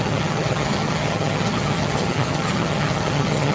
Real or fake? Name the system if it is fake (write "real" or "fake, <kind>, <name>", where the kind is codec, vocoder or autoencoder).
fake, vocoder, HiFi-GAN